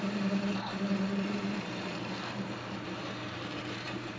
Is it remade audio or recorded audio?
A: remade